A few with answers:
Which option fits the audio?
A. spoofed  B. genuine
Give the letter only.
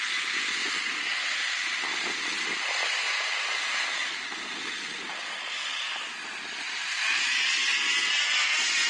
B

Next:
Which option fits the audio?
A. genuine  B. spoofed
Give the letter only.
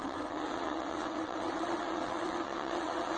B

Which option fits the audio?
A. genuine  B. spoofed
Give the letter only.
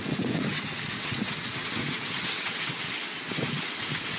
B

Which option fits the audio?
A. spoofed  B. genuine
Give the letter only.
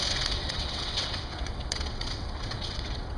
A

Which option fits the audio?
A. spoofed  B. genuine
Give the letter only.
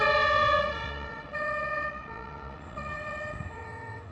A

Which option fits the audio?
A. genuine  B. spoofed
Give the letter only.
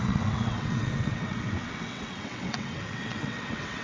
B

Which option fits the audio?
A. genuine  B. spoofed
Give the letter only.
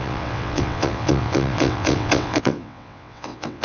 B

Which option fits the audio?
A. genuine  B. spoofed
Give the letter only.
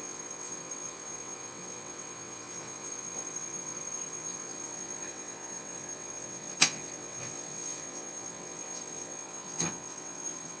B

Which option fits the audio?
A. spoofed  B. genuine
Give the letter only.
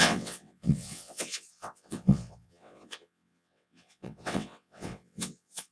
A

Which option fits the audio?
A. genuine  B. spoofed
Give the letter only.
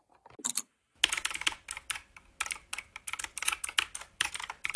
A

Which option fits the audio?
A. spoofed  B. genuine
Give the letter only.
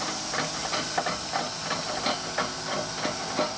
B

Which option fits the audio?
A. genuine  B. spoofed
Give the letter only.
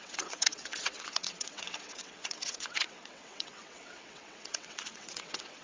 B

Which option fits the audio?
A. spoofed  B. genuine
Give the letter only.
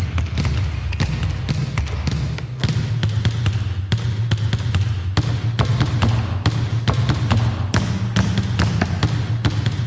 B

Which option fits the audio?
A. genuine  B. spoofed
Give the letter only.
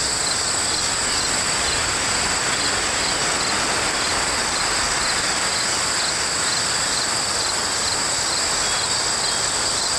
A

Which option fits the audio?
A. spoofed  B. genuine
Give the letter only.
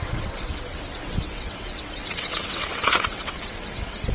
A